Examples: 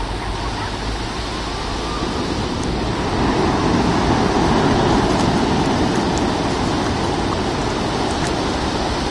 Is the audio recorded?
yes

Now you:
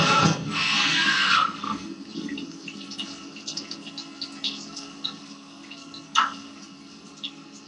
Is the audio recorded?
no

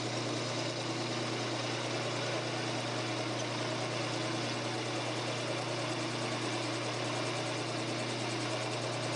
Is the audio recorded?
yes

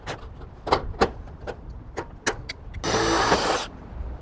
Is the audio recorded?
yes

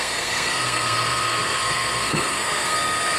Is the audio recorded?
no